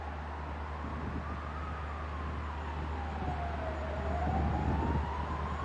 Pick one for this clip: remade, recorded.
recorded